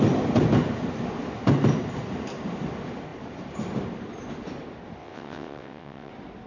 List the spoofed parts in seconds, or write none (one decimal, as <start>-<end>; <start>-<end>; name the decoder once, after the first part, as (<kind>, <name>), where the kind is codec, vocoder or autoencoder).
5.0-6.1 (vocoder, WaveNeXt)